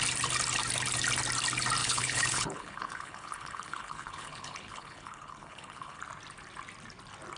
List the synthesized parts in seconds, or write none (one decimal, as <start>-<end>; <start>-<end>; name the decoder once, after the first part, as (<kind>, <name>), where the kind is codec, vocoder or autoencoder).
1.8-6.0 (codec, HILCodec)